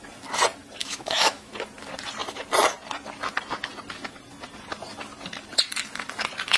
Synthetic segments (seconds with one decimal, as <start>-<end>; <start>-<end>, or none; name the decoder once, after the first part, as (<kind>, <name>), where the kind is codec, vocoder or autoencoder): 0.8-1.5 (autoencoder, DAC-VAE)